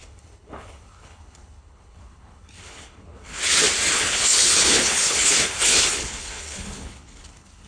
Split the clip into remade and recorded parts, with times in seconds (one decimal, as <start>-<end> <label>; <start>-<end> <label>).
0.0-3.4 remade; 3.4-3.9 recorded; 3.9-7.7 remade